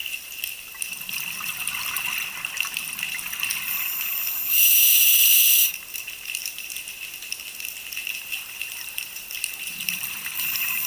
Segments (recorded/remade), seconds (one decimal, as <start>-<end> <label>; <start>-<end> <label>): 0.0-1.0 remade; 1.0-5.7 recorded; 5.7-6.7 remade; 6.7-8.0 recorded; 8.0-10.9 remade